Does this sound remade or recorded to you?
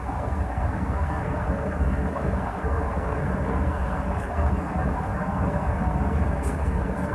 remade